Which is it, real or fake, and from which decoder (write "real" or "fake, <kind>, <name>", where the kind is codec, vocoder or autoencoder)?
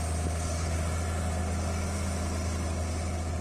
real